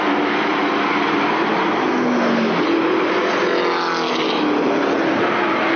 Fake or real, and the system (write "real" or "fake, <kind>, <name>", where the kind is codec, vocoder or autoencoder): real